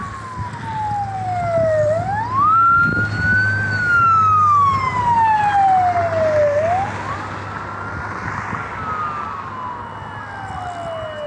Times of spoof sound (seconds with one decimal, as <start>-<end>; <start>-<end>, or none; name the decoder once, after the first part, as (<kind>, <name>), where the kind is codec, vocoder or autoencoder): none